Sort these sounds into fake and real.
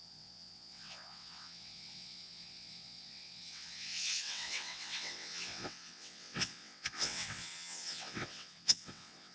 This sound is fake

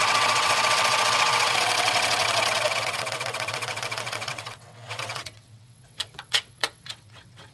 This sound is fake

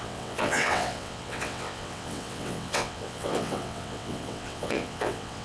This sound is fake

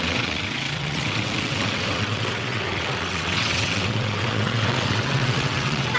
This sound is fake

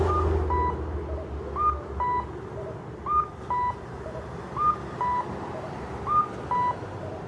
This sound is real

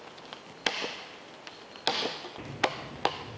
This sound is real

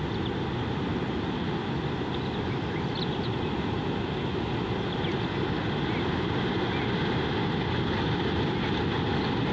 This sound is real